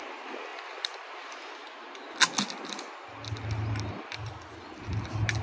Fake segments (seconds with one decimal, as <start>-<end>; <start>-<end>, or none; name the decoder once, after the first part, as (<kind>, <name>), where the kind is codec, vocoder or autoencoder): none